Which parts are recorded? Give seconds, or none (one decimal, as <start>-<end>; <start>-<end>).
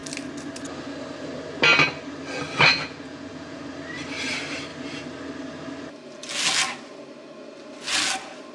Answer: 0.0-2.8; 3.6-8.5